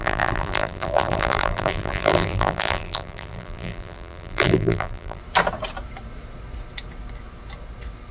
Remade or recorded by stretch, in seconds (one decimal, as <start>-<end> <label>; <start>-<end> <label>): 0.0-5.2 remade; 5.2-8.1 recorded